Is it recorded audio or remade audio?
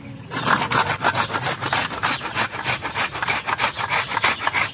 recorded